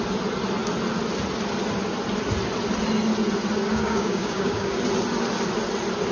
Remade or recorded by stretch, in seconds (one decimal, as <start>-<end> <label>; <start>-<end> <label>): 0.0-3.7 recorded; 3.7-4.8 remade; 4.8-6.1 recorded